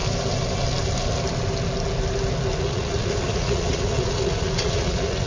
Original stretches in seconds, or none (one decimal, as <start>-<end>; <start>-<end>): 0.0-2.6